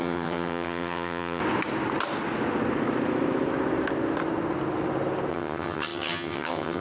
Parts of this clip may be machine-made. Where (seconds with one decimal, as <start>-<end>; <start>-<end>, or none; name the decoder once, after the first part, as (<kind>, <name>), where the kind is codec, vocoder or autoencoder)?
0.0-1.4 (vocoder, HiFi-GAN); 5.3-6.8